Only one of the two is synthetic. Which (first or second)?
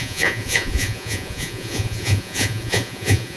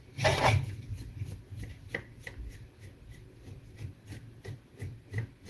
first